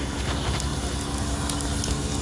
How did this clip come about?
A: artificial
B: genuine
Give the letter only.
B